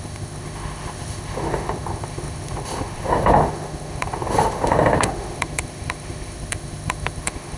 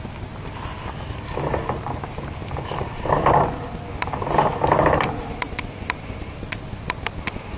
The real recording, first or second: second